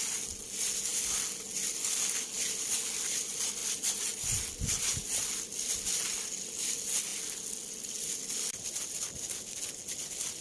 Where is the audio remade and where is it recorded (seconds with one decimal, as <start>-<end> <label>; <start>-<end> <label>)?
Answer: 0.0-10.4 recorded